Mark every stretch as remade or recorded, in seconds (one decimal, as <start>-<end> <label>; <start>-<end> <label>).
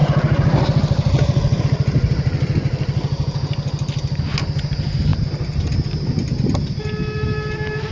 0.0-7.9 recorded